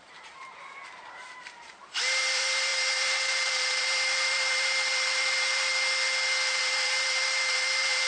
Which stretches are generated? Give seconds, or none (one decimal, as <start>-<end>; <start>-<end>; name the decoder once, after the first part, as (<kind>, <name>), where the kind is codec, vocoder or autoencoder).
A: 0.0-5.7 (vocoder, BigVGAN v2); 6.6-8.1